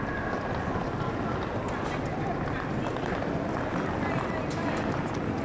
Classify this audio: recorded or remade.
recorded